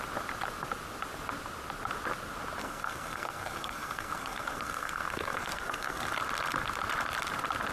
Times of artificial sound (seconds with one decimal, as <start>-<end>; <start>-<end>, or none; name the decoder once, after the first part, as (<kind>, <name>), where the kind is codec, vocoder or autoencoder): 2.6-6.1 (codec, SNAC)